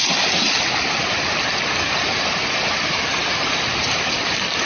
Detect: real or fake real